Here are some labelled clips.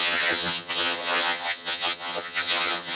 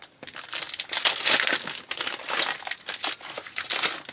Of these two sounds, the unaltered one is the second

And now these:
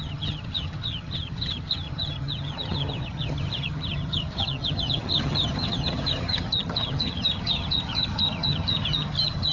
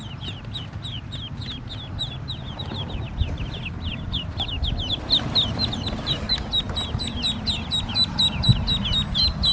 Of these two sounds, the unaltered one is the second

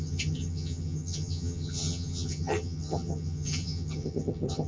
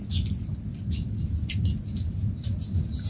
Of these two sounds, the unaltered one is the second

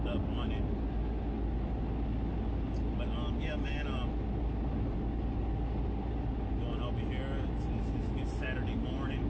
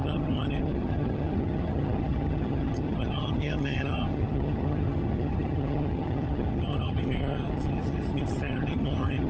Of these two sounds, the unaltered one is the first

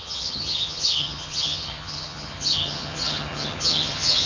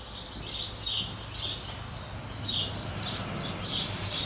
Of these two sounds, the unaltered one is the second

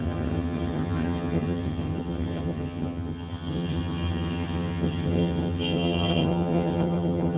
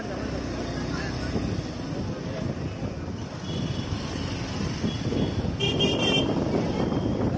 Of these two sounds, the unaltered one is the second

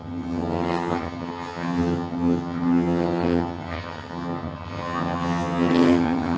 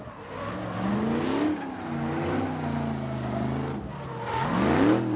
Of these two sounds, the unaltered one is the second